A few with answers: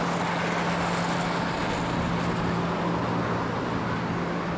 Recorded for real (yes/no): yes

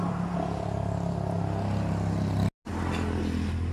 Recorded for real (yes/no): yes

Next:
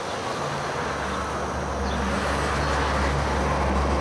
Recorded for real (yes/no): yes